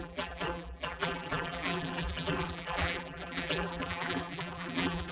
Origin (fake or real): fake